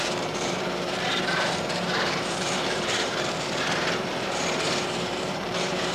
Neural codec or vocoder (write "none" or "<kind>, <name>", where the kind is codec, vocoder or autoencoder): vocoder, BigVGAN v2